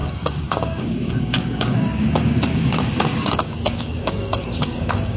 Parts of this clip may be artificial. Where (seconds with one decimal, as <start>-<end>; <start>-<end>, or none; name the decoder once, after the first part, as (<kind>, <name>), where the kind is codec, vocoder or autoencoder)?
0.0-5.2 (codec, DAC)

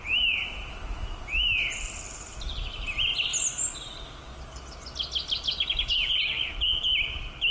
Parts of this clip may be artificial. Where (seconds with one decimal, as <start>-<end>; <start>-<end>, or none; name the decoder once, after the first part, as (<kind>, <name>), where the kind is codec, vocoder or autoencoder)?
none